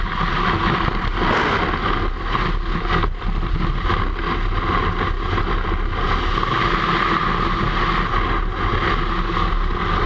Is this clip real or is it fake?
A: real